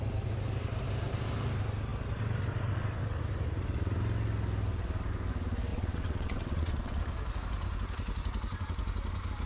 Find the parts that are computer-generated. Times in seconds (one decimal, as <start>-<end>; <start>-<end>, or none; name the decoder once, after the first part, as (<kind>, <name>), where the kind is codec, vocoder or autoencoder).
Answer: 5.7-7.0 (vocoder, WaveNeXt)